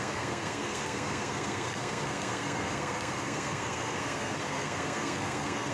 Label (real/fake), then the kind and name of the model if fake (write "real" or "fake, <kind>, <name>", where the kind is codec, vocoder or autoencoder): fake, codec, SNAC